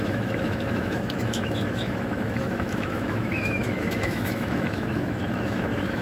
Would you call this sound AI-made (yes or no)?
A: yes